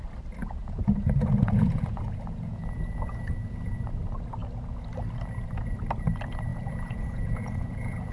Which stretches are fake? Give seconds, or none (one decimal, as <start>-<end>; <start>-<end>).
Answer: 0.4-3.8; 6.5-8.1